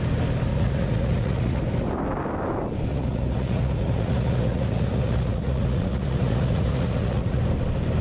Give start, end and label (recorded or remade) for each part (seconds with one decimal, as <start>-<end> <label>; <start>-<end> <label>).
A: 0.0-0.5 recorded; 0.5-1.6 remade; 1.6-2.9 recorded; 2.9-7.4 remade; 7.4-8.0 recorded